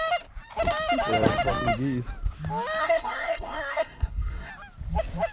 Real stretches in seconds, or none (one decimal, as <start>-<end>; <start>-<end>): 0.0-2.8; 4.5-5.3